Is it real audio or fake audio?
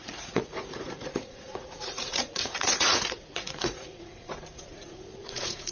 fake